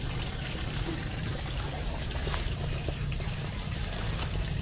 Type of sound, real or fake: fake